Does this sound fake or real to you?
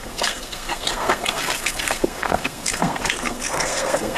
fake